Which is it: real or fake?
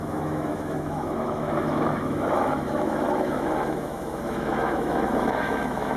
fake